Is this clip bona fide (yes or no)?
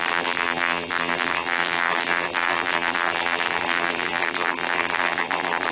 no